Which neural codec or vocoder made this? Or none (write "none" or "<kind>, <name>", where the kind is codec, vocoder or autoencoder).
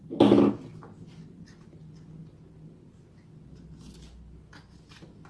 none